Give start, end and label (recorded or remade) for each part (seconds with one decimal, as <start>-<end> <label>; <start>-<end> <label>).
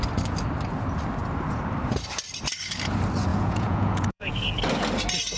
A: 0.0-3.3 recorded; 3.3-4.3 remade; 4.3-5.4 recorded